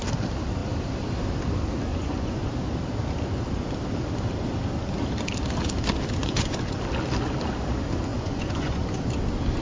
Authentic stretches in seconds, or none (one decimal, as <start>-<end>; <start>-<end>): 0.0-1.9; 2.5-6.2; 6.8-8.1; 8.8-9.6